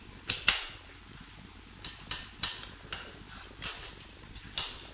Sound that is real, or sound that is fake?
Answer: real